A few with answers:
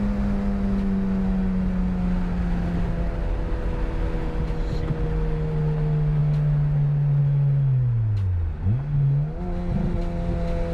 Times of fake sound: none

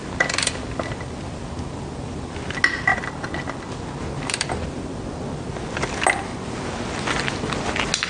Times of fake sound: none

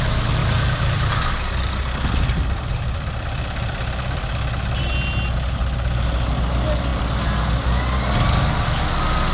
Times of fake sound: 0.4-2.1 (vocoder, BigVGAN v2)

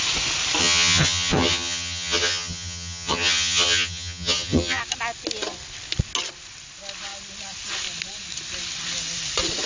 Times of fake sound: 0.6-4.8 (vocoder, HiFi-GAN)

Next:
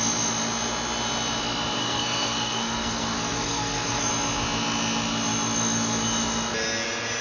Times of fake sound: 1.8-4.1 (codec, SNAC)

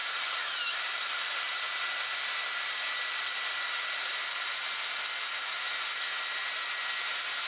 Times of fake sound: none

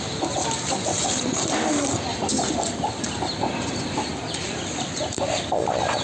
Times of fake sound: 2.1-5.6 (vocoder, BigVGAN v2)

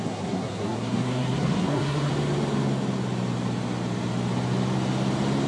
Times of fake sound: 0.0-2.1 (codec, SNAC)